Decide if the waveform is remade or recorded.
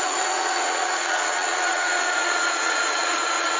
remade